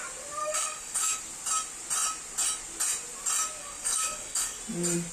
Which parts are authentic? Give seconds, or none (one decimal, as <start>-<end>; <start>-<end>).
0.0-0.4; 1.2-3.6; 4.6-5.1

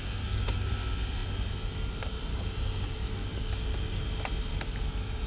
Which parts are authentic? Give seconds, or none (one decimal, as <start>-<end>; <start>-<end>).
0.7-2.3; 4.0-5.3